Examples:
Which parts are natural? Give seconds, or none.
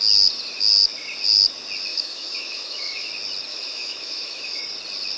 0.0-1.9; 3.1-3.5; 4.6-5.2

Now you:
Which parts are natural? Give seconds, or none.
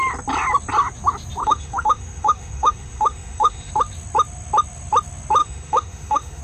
0.0-1.4; 3.7-5.4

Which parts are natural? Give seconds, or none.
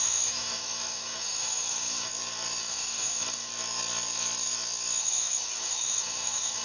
2.1-2.6; 3.5-5.0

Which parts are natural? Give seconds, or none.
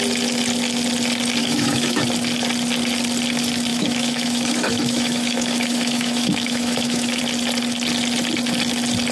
0.0-1.4; 2.0-3.7; 7.2-9.1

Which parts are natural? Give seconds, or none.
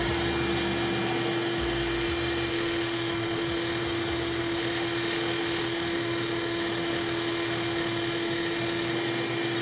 0.0-2.5; 3.8-4.4; 8.9-9.6